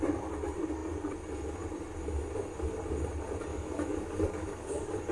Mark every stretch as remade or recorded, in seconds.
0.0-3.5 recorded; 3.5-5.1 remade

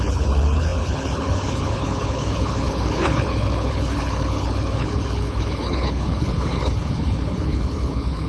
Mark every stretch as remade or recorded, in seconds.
0.0-8.3 remade

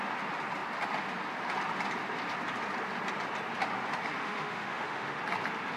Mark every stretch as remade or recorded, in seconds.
0.0-4.2 recorded; 4.2-5.2 remade; 5.2-5.8 recorded